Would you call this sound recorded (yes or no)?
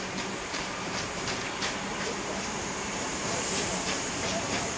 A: no